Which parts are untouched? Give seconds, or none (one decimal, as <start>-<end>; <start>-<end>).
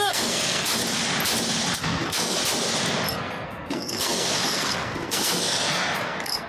0.8-1.8; 2.4-3.1